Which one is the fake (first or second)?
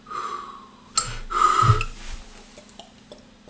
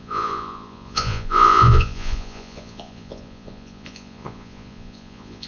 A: second